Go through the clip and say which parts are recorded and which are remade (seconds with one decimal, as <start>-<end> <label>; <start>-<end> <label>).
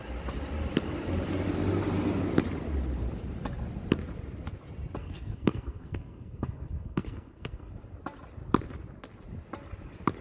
0.0-5.0 recorded; 5.0-7.7 remade; 7.7-10.2 recorded